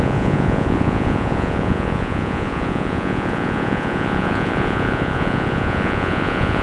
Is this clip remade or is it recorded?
remade